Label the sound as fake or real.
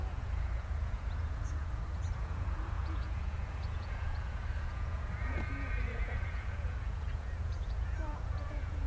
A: fake